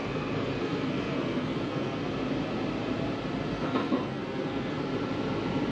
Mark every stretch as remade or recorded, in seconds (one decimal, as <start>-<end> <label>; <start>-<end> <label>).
0.0-2.0 remade; 2.0-3.5 recorded; 3.5-4.9 remade; 4.9-5.7 recorded